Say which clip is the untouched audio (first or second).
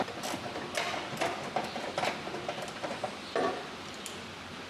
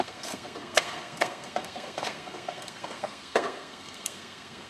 first